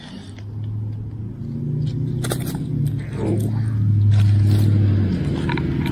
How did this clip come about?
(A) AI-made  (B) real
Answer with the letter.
B